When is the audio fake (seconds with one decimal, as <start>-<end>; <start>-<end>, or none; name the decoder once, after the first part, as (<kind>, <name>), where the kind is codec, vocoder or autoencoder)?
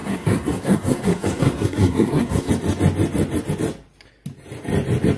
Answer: 0.0-2.5 (codec, SNAC)